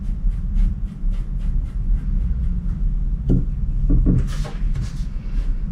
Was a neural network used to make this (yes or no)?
no